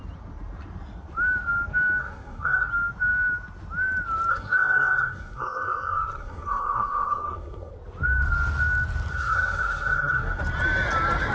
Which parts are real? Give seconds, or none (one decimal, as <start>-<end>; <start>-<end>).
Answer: 0.0-2.0; 2.7-4.3; 7.7-9.1; 10.4-11.3